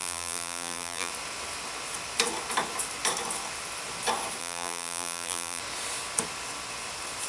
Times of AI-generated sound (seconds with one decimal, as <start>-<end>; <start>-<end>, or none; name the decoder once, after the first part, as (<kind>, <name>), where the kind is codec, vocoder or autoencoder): 0.0-1.1 (vocoder, BigVGAN v2); 4.4-5.6